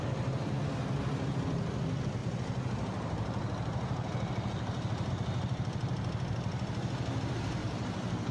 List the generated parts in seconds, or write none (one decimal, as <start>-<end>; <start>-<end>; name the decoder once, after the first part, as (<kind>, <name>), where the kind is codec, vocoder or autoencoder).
2.2-5.1 (vocoder, BigVGAN v2); 7.6-8.3